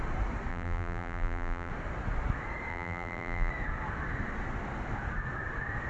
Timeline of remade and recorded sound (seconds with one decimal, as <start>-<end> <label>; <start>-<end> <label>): 0.0-0.5 recorded; 0.5-1.7 remade; 1.7-2.7 recorded; 2.7-3.5 remade; 3.5-5.9 recorded